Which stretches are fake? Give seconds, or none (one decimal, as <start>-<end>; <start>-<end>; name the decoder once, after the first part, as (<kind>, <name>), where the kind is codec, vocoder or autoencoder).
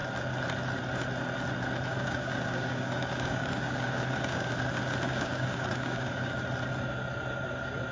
1.9-4.5 (codec, DAC); 5.1-6.3